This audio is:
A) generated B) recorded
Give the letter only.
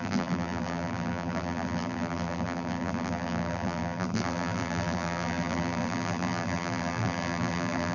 A